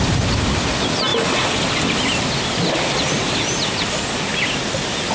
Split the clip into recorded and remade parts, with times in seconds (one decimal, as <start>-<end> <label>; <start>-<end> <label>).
0.0-5.1 recorded